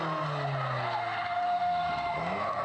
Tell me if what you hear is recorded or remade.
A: recorded